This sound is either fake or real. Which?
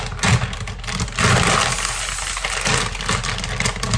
real